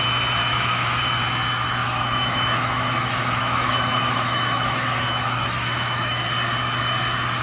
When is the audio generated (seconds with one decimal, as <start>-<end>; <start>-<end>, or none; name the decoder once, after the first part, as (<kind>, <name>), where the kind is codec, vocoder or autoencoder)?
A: 0.4-1.0 (autoencoder, DAC-VAE); 1.8-6.2